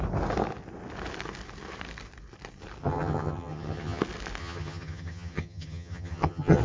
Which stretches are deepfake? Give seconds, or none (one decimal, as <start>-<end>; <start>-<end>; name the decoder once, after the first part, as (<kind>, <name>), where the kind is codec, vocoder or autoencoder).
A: 2.8-4.0 (vocoder, HiFi-GAN); 4.4-6.6